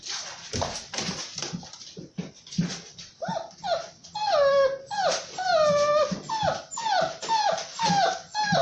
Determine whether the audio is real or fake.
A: real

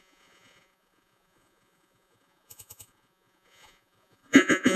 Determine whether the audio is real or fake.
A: fake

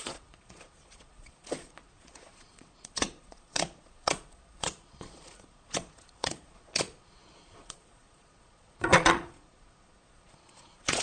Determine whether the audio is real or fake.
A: fake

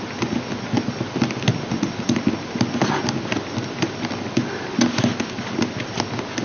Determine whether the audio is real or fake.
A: real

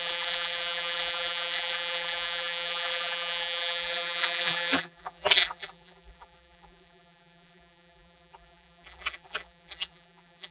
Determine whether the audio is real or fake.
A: fake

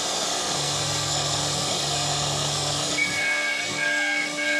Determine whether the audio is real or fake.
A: fake